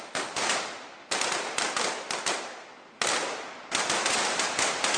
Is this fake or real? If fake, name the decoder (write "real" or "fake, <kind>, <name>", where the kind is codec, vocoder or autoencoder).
real